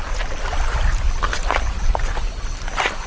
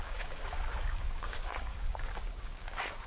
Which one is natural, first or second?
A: first